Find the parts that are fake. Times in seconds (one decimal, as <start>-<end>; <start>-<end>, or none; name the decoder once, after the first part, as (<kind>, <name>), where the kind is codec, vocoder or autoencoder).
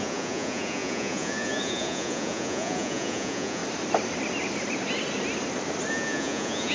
0.0-3.6 (vocoder, Vocos); 5.9-6.7